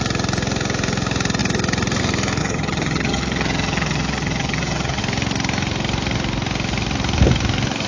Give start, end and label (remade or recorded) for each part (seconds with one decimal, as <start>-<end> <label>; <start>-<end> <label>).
0.0-2.4 recorded; 2.4-5.0 remade; 5.0-7.9 recorded